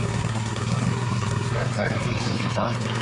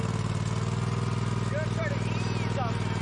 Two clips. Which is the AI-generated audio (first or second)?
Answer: first